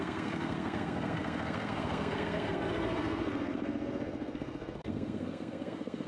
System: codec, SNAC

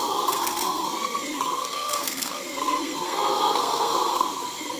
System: codec, SNAC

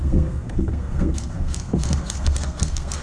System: codec, SNAC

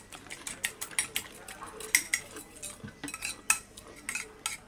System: none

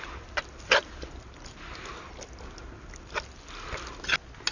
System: none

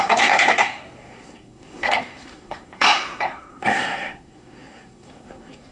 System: codec, SNAC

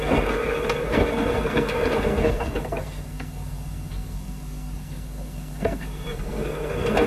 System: codec, SNAC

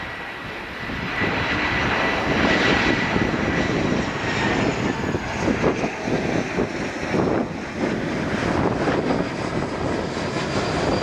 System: none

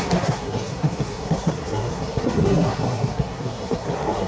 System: codec, SNAC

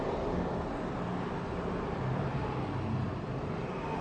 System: none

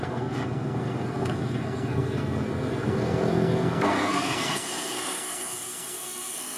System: codec, SNAC